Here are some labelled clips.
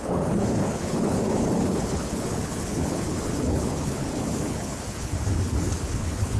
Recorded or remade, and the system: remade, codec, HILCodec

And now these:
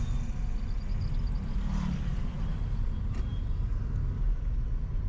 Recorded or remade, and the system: recorded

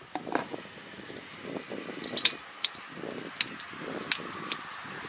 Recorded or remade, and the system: recorded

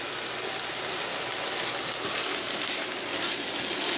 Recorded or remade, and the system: recorded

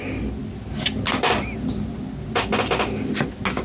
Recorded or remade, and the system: recorded